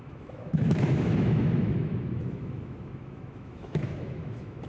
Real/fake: fake